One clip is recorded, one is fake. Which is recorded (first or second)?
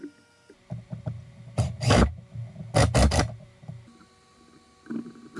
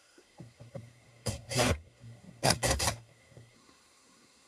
first